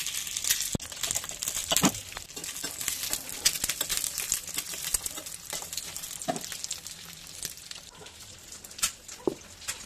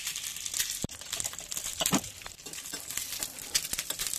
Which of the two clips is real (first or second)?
first